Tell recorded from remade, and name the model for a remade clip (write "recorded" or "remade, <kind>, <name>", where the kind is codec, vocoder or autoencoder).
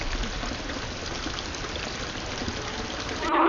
recorded